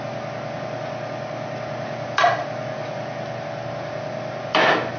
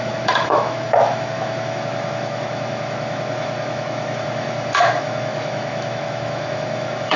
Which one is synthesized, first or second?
second